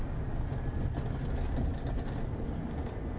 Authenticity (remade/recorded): recorded